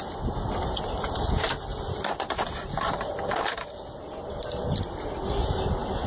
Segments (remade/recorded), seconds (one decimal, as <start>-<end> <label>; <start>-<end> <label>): 0.0-1.7 recorded; 1.7-4.1 remade; 4.1-6.1 recorded